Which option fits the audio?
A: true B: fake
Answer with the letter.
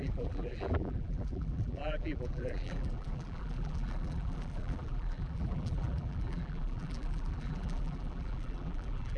B